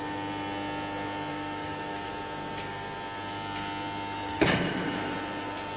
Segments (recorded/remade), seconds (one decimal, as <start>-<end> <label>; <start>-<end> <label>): 0.0-1.3 recorded; 1.3-2.1 remade; 2.1-5.8 recorded